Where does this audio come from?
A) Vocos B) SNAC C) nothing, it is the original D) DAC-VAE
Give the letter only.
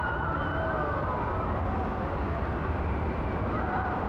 C